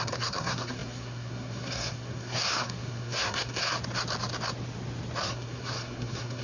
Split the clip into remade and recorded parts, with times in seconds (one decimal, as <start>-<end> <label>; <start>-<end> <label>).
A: 0.0-3.6 remade; 3.6-5.2 recorded; 5.2-6.4 remade